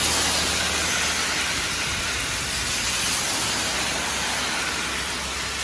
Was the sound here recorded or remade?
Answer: recorded